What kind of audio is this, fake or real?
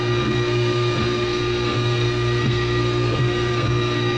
fake